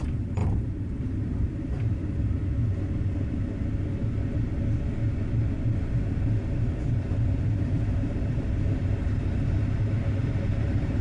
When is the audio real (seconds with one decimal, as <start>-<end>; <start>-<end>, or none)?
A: 0.4-1.0; 2.4-5.8